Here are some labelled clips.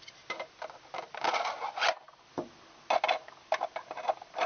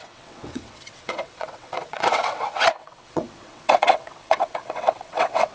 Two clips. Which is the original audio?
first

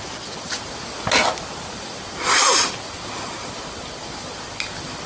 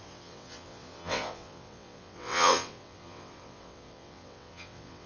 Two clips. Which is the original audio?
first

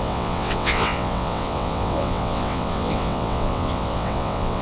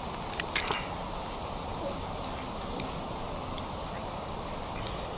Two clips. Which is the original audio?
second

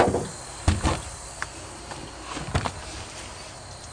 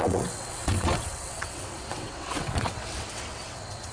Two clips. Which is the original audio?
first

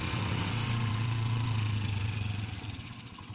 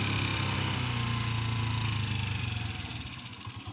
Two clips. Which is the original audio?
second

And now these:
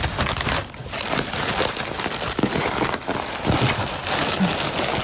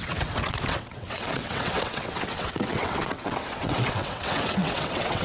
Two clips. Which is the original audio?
first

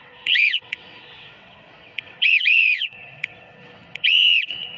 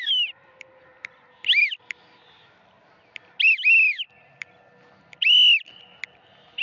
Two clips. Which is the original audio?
second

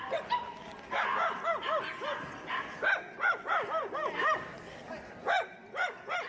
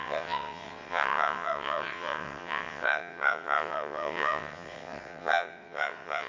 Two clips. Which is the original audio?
first